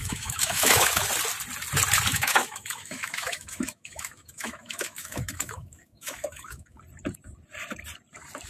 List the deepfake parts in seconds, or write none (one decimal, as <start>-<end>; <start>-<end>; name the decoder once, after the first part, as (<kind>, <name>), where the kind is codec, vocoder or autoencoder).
0.0-1.0 (autoencoder, DAC-VAE); 2.1-6.8